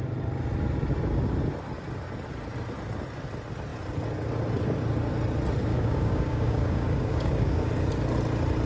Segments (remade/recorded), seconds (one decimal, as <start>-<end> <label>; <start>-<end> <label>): 0.0-5.7 recorded; 5.7-7.7 remade; 7.7-8.7 recorded